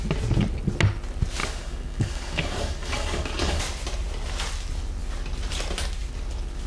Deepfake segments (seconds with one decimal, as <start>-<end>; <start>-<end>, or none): 1.4-3.6